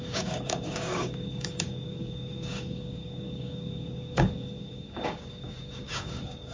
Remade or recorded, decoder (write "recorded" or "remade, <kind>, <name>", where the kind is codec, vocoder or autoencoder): remade, codec, DAC